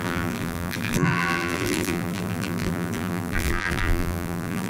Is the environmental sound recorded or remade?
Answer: remade